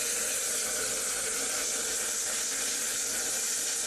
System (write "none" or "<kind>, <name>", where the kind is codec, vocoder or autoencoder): none